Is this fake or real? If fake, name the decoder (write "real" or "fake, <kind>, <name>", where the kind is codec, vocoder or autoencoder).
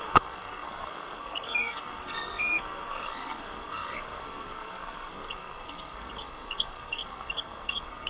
fake, codec, SNAC